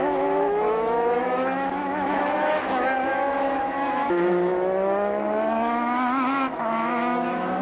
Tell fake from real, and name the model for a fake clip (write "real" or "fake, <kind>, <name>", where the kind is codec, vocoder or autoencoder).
fake, autoencoder, DAC-VAE